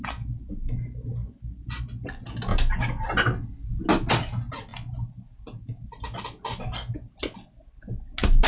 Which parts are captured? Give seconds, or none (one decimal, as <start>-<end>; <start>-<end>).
0.0-8.5